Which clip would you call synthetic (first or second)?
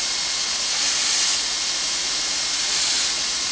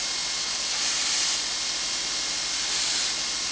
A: first